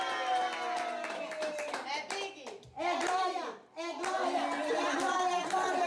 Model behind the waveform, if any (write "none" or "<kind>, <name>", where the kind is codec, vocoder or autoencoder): none